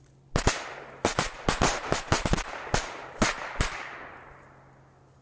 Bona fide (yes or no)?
yes